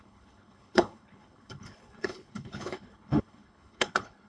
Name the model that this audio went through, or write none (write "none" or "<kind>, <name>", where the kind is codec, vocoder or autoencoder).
codec, HILCodec